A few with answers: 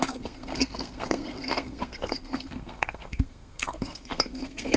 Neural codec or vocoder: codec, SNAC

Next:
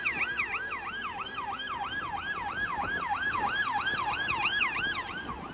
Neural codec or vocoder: none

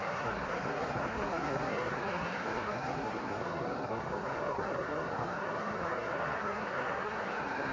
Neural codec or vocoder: codec, SNAC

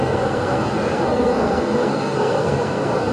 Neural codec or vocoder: codec, SNAC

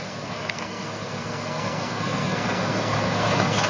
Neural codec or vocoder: codec, SNAC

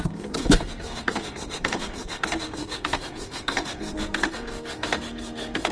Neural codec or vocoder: codec, SNAC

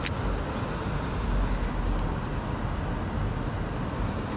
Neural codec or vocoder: none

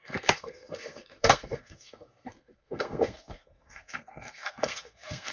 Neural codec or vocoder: codec, SNAC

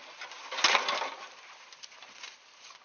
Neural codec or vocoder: none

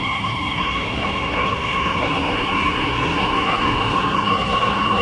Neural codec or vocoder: codec, SNAC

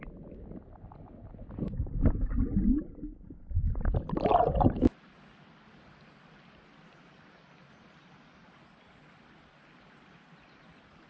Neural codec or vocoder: none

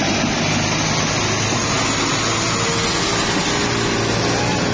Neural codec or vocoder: none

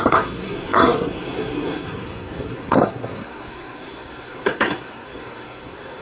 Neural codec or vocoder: codec, SNAC